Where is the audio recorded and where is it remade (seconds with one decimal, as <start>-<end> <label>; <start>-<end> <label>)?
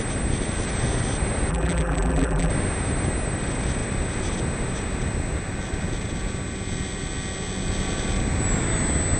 0.0-1.5 recorded; 1.5-2.5 remade; 2.5-9.2 recorded